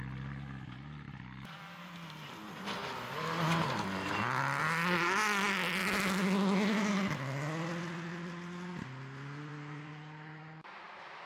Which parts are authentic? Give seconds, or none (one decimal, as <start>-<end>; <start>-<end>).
0.0-9.5